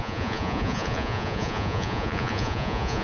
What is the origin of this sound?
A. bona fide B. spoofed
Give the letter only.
B